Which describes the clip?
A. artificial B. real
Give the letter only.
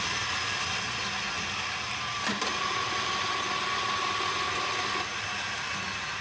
B